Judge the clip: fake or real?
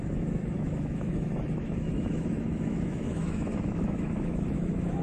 fake